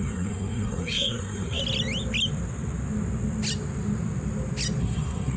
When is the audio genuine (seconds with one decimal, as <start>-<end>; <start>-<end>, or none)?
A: 1.6-4.8